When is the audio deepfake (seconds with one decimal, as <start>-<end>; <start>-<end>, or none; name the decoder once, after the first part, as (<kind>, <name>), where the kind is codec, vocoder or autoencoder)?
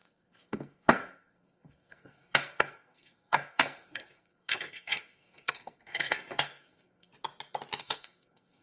0.0-7.1 (codec, SNAC); 7.8-8.6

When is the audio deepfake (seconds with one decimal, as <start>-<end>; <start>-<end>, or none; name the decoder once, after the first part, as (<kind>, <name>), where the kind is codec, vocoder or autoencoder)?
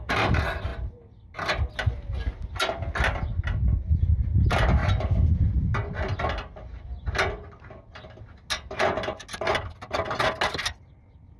none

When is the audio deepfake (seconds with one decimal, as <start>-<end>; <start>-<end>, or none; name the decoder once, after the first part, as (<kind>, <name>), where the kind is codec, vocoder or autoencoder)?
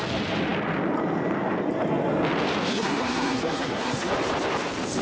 2.7-4.1 (codec, SNAC)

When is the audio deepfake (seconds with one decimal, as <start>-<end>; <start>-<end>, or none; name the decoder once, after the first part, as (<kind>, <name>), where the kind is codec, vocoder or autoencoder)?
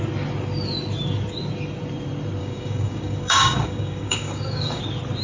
2.4-4.8 (codec, DAC)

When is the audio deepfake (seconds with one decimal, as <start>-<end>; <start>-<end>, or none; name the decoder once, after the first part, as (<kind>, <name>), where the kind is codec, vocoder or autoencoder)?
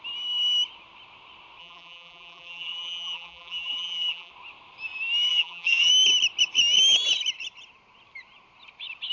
1.6-4.3 (vocoder, BigVGAN v2); 5.3-5.9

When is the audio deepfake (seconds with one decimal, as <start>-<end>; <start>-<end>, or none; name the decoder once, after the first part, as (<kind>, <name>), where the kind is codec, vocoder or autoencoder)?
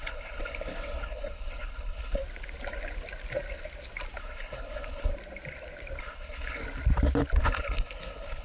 0.0-2.2 (codec, HILCodec); 4.2-5.1; 6.0-6.6; 7.4-8.4